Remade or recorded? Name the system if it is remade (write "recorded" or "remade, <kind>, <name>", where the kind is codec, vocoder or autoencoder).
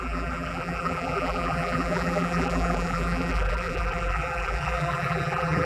remade, vocoder, BigVGAN v2